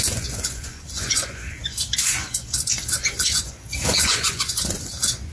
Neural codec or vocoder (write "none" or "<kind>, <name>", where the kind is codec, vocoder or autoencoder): vocoder, Vocos